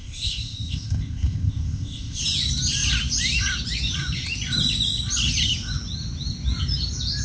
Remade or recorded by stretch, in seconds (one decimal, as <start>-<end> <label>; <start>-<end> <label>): 0.0-2.2 remade; 2.2-7.2 recorded